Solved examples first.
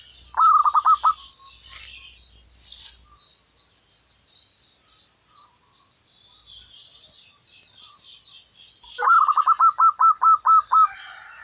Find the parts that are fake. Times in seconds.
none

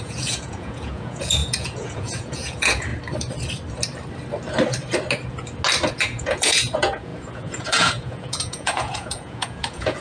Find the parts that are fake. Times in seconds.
0.0-2.9; 5.9-10.0

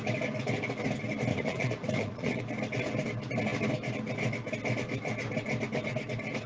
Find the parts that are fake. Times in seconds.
1.3-2.4

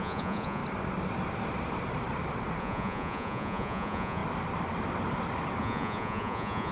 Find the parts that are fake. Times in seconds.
0.0-0.6; 2.6-4.2; 5.6-6.7

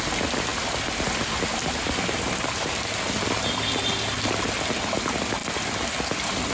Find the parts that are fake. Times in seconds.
none

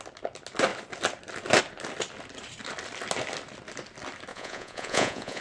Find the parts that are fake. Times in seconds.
4.3-5.4